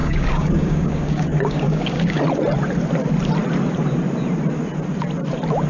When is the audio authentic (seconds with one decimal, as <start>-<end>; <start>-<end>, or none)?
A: 2.2-5.7